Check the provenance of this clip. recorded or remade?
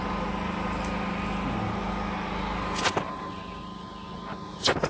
recorded